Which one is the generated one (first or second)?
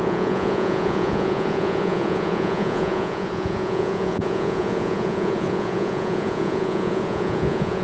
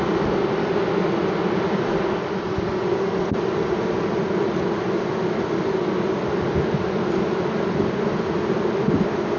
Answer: first